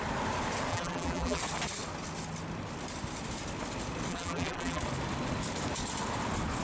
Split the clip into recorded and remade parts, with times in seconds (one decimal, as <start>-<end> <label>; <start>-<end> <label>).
0.0-0.7 recorded; 0.7-1.4 remade; 1.4-4.1 recorded; 4.1-4.8 remade; 4.8-6.6 recorded

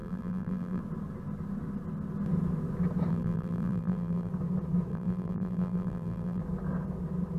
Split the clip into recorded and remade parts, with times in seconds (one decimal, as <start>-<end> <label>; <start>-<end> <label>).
0.0-0.8 remade; 0.8-3.1 recorded; 3.1-4.3 remade; 4.3-4.9 recorded; 4.9-6.4 remade; 6.4-7.4 recorded

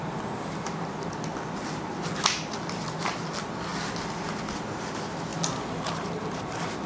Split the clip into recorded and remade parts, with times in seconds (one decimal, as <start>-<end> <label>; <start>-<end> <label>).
0.0-6.9 recorded